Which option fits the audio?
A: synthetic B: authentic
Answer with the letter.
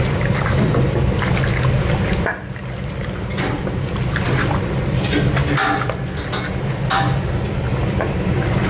B